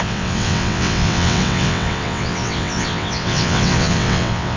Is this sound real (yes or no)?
no